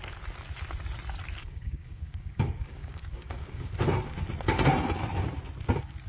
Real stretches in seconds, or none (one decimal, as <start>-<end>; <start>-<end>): 0.0-1.4; 3.7-6.1